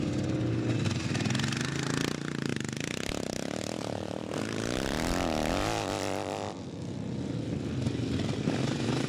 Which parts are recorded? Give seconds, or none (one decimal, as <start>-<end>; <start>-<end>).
0.0-9.1